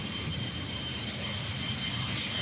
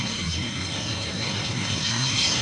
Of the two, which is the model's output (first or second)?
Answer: second